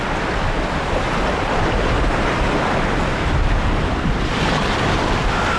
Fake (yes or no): no